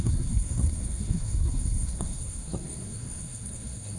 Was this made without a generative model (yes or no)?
no